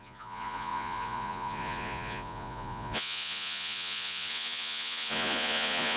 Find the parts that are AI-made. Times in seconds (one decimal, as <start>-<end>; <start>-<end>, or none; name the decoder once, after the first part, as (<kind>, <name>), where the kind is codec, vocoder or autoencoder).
0.0-6.0 (vocoder, Vocos)